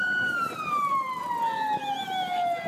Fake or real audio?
real